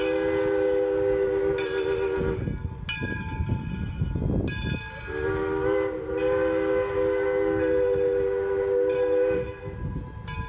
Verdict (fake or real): real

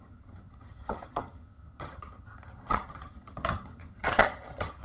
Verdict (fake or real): fake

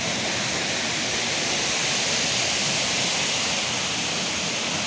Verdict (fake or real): real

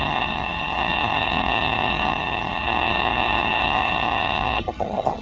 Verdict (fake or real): fake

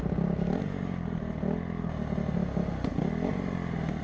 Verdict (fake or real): real